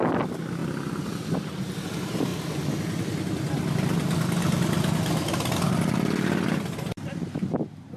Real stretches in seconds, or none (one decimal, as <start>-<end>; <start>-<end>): 0.0-8.0